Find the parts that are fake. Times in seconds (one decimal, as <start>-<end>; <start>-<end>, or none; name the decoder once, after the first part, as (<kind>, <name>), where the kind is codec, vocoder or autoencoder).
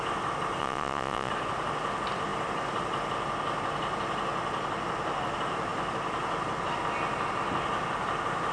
0.6-1.3 (vocoder, Vocos)